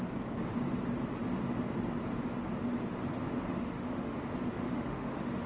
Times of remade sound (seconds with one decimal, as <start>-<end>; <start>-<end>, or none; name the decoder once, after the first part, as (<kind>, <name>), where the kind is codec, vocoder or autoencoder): 3.5-4.1 (autoencoder, DAC-VAE); 4.5-5.5